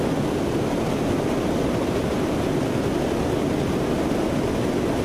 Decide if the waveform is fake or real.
real